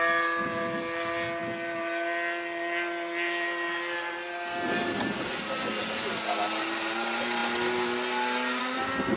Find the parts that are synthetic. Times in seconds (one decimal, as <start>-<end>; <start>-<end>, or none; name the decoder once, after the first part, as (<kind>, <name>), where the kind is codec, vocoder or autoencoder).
none